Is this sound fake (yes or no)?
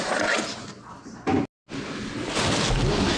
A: no